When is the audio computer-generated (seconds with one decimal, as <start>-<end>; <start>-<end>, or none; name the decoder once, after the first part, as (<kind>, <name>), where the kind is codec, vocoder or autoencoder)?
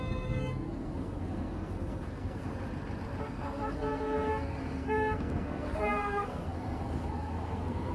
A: 0.0-2.5 (codec, SNAC); 3.2-7.9